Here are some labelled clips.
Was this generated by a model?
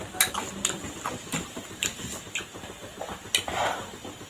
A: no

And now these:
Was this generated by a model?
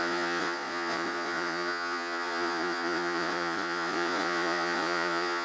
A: yes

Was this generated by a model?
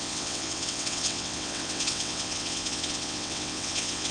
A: yes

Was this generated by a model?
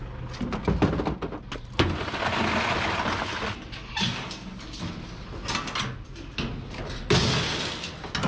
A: no